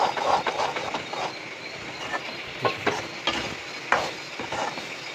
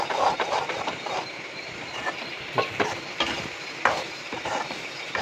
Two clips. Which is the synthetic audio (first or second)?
second